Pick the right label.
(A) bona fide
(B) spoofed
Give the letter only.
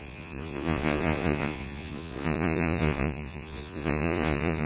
B